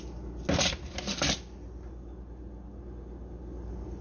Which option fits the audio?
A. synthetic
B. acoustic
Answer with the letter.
B